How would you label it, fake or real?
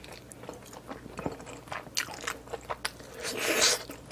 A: real